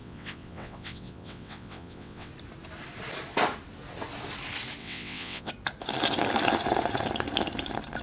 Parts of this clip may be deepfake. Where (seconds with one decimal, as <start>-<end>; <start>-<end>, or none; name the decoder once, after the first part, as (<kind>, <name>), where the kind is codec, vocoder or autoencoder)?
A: 0.0-2.3 (vocoder, WaveNeXt); 4.8-5.5